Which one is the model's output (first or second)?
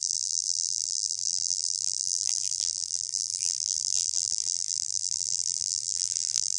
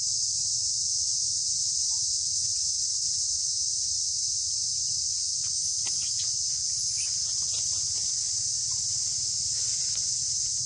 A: first